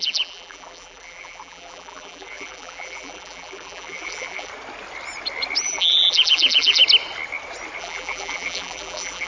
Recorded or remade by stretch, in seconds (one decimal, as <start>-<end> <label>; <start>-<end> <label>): 0.0-4.5 remade; 4.5-5.6 recorded; 5.6-6.8 remade; 6.8-7.8 recorded; 7.8-9.3 remade